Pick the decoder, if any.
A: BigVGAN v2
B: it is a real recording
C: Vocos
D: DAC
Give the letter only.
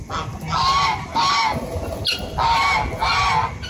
B